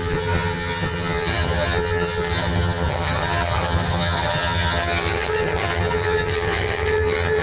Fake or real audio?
fake